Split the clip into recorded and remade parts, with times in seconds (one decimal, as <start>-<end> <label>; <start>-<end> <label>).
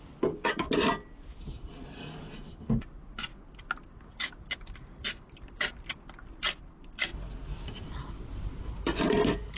0.0-9.6 recorded